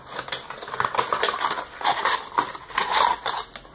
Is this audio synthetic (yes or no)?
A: no